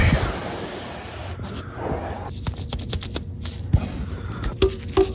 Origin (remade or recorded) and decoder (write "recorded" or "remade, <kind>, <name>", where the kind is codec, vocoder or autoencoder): recorded